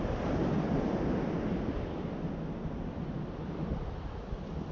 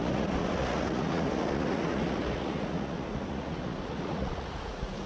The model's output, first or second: second